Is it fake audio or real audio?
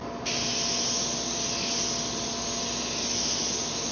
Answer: real